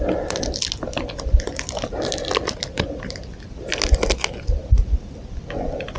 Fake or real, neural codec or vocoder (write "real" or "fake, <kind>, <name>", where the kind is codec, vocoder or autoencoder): real